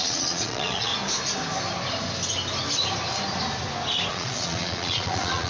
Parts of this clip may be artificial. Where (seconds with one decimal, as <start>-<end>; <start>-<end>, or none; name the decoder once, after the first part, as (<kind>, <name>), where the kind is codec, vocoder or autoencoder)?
0.0-0.9 (vocoder, Vocos); 4.1-5.5